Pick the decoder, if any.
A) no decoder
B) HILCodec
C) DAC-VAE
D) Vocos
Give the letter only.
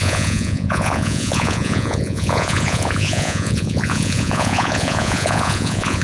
D